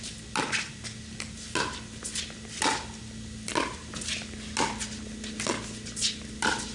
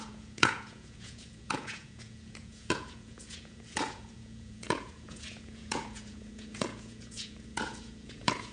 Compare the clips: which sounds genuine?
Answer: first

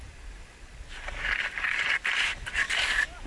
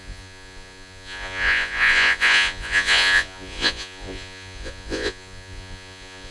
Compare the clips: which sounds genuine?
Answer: first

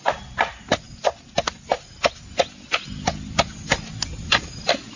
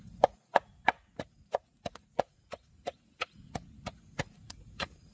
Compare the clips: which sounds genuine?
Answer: first